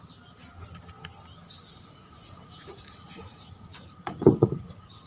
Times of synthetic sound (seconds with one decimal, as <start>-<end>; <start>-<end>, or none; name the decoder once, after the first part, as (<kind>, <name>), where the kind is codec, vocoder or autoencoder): 1.7-5.1 (vocoder, Vocos)